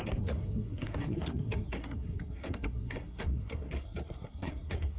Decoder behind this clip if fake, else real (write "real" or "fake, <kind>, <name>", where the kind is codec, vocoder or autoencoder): fake, codec, SNAC